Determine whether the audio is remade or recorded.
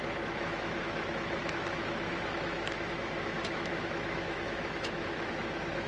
remade